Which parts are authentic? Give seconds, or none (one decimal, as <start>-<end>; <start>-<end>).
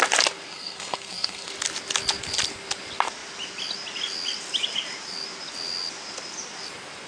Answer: 0.0-0.5; 1.5-7.1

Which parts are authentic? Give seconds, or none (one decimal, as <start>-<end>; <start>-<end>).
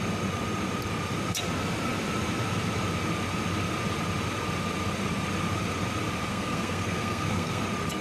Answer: 0.0-6.3; 7.6-8.0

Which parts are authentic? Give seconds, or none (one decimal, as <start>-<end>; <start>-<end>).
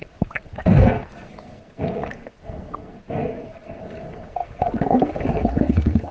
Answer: none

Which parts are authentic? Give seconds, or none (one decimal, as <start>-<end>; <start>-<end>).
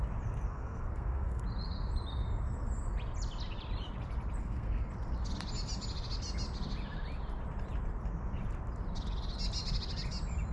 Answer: 0.0-0.5; 1.4-4.4; 4.9-10.5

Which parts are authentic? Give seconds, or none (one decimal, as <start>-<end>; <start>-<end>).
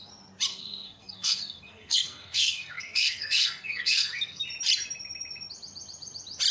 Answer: 0.0-0.5; 4.4-6.5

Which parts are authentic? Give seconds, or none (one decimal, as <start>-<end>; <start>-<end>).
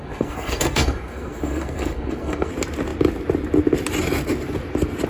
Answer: 2.5-5.1